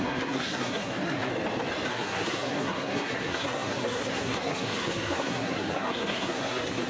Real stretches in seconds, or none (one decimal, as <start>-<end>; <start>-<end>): 1.3-1.9